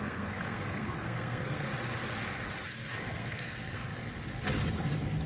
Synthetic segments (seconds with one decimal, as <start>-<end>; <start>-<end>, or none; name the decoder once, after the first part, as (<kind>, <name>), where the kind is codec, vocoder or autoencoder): 0.0-1.7 (codec, SNAC); 2.7-3.9